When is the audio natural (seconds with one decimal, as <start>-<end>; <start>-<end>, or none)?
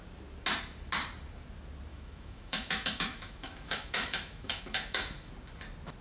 0.0-1.9; 5.3-6.0